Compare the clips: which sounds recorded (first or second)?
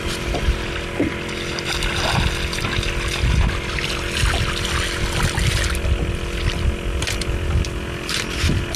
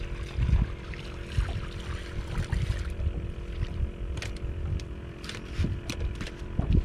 first